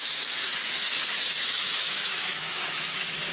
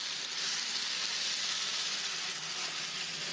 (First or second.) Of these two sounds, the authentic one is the second